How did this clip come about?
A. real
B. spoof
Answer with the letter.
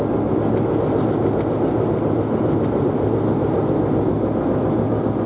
A